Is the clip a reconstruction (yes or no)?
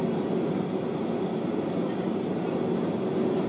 no